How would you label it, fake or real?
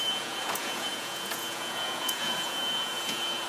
fake